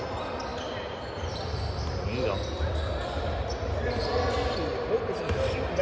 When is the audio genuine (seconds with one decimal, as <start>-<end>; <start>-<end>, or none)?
0.0-5.8